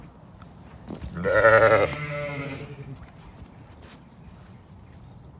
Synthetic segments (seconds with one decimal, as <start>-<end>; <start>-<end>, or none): 1.9-4.3